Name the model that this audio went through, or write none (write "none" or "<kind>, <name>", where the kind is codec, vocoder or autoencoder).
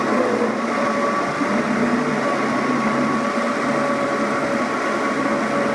none